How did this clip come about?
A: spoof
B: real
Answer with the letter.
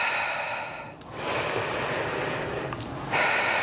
B